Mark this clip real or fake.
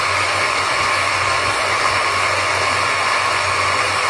fake